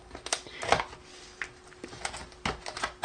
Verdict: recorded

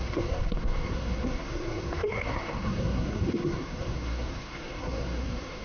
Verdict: remade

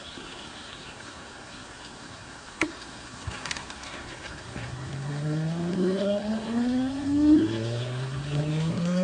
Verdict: remade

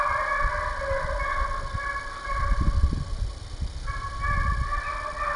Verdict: recorded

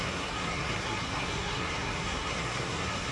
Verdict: remade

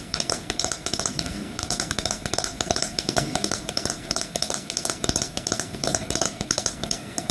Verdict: remade